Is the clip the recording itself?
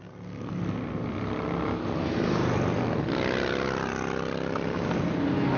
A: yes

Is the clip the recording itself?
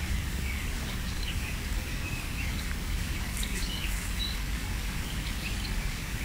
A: no